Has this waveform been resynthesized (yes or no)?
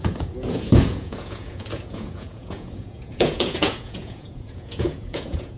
yes